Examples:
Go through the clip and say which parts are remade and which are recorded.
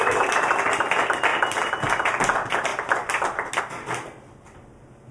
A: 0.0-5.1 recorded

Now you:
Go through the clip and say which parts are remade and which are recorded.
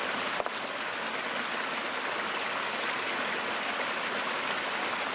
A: 0.0-5.1 recorded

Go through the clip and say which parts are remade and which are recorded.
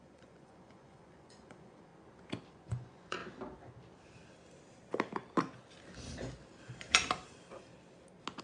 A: 0.0-1.9 remade; 1.9-2.5 recorded; 2.5-3.2 remade; 3.2-8.4 recorded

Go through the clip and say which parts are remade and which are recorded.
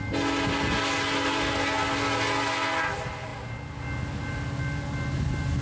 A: 0.0-5.6 recorded